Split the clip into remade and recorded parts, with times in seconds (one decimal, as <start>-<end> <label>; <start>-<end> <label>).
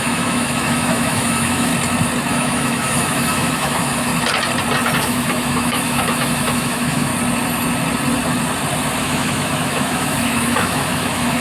0.0-1.7 remade; 1.7-2.3 recorded; 2.3-4.1 remade; 4.1-5.0 recorded; 5.0-7.1 remade; 7.1-9.0 recorded; 9.0-11.4 remade